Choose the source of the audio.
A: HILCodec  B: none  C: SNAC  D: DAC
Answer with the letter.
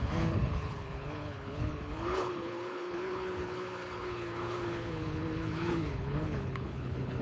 A